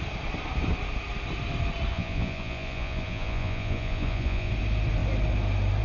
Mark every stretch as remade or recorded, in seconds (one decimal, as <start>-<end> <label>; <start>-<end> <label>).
0.0-1.9 recorded; 1.9-4.5 remade; 4.5-5.8 recorded